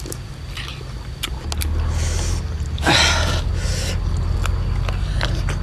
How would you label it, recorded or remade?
recorded